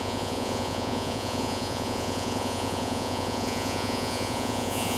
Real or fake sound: fake